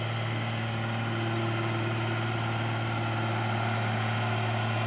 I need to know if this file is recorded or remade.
recorded